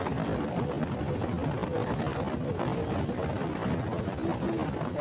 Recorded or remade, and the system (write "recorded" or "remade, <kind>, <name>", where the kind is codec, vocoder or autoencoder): recorded